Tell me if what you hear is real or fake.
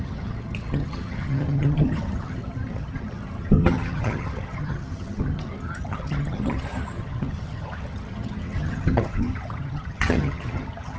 fake